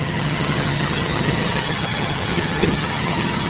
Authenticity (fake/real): fake